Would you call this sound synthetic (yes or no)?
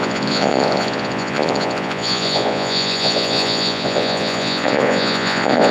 yes